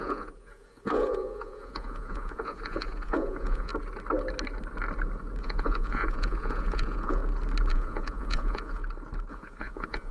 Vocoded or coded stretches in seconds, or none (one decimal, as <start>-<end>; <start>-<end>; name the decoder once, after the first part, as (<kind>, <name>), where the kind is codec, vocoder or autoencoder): 0.0-3.7 (vocoder, Vocos); 5.4-7.2; 7.7-8.8; 9.3-10.1